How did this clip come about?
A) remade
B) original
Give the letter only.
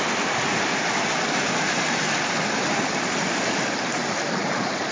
B